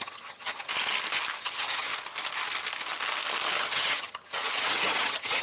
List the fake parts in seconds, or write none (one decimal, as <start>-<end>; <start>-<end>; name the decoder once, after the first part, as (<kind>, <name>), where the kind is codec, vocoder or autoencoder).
0.0-0.7 (vocoder, HiFi-GAN); 1.4-1.9; 3.6-5.4